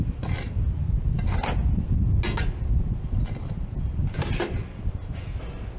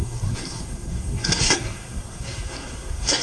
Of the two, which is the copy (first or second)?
second